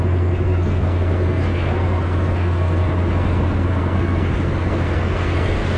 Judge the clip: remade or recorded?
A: remade